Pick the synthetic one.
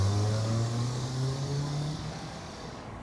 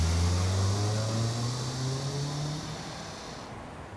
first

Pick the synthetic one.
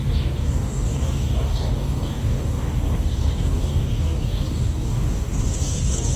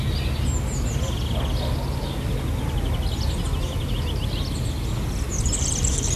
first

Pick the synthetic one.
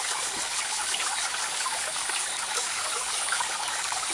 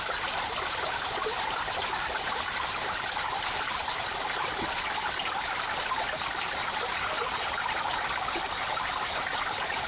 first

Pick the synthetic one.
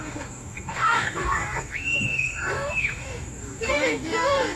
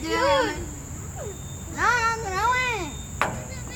first